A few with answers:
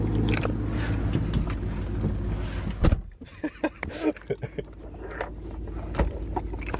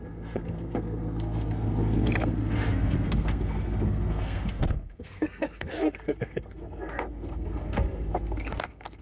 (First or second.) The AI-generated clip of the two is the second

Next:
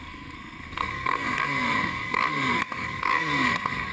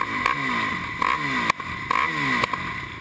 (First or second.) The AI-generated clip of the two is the first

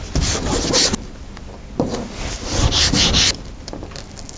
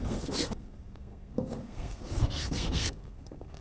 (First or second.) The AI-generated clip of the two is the second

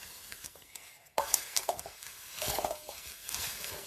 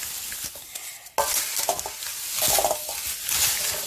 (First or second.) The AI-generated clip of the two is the first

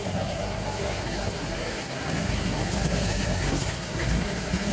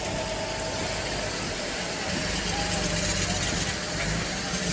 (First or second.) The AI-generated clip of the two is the first